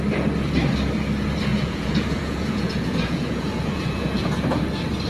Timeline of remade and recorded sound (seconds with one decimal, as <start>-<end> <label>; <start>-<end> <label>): 0.0-1.5 recorded; 1.5-4.6 remade; 4.6-5.1 recorded